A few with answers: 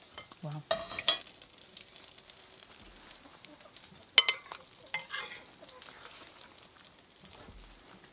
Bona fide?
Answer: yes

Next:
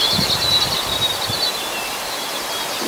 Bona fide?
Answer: yes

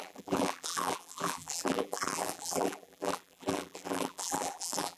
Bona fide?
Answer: no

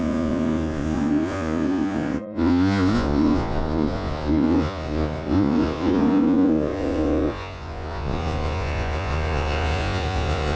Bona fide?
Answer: no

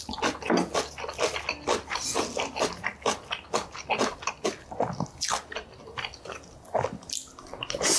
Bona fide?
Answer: yes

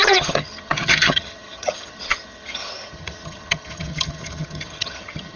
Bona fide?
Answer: no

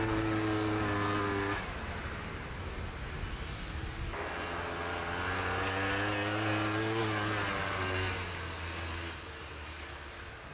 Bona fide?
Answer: yes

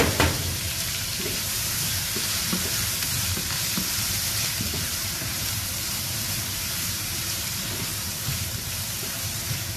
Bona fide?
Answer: no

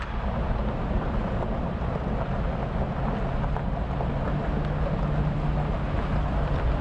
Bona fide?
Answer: yes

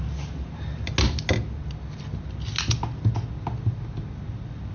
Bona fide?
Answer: yes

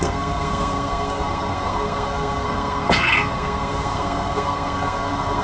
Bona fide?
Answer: no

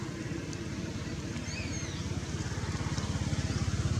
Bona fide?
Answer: yes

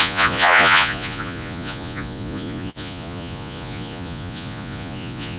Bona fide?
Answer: no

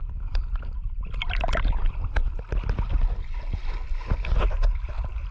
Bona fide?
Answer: yes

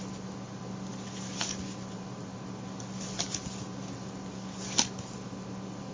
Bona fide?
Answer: yes